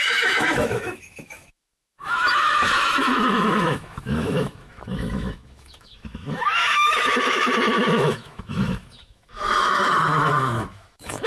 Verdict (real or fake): fake